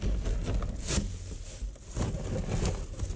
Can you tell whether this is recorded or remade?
recorded